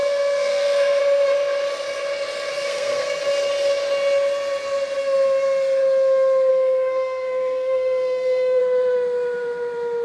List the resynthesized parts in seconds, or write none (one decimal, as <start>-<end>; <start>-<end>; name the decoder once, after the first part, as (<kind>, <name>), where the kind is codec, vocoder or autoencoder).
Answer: 0.0-1.0 (codec, SNAC); 2.5-3.2; 6.5-8.6